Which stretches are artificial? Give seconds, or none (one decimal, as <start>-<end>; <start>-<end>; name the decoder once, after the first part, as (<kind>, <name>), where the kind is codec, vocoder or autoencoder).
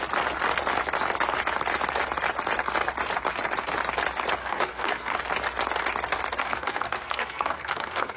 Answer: 4.4-5.2 (codec, SNAC); 6.4-8.2